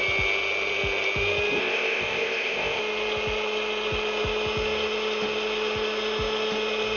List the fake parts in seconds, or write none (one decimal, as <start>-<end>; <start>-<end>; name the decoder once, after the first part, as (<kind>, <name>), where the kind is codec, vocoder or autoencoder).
1.6-2.8 (codec, ZipCodec)